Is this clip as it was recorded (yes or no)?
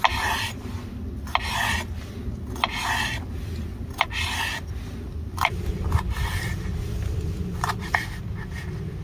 yes